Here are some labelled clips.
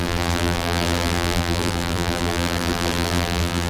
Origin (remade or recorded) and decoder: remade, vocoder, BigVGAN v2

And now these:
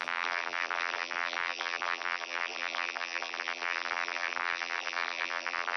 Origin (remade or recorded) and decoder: remade, vocoder, BigVGAN v2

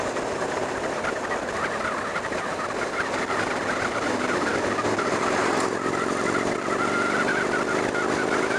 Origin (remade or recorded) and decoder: recorded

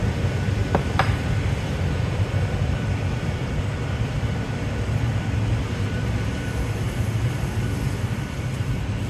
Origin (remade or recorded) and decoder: remade, vocoder, BigVGAN v2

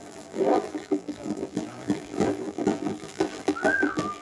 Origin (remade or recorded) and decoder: remade, vocoder, BigVGAN v2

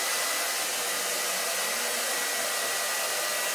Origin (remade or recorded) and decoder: recorded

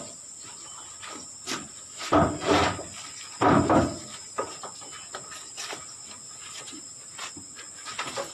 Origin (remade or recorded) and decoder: recorded